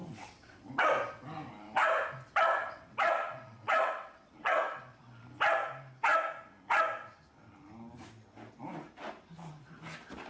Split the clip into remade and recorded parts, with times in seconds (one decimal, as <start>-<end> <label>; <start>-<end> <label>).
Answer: 0.0-0.7 remade; 0.7-2.6 recorded; 2.6-4.8 remade; 4.8-10.3 recorded